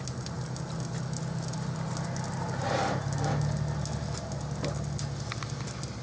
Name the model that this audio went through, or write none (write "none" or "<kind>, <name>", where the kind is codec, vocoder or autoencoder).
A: none